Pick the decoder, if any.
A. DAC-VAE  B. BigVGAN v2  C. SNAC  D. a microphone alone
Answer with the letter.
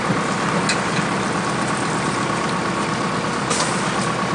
D